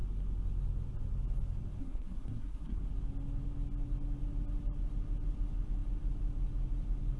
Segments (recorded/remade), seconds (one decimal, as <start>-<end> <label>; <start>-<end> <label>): 0.0-1.8 recorded; 1.8-2.8 remade; 2.8-7.2 recorded